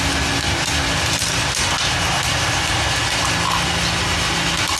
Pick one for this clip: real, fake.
real